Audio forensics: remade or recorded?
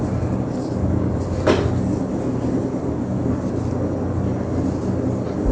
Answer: recorded